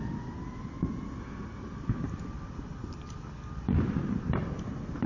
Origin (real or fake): real